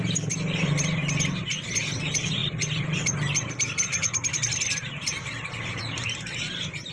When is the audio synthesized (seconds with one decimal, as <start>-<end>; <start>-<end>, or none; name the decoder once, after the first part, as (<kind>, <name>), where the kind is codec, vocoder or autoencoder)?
none